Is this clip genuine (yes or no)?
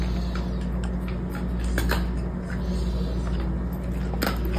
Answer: yes